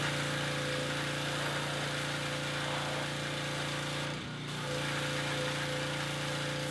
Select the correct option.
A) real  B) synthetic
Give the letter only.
A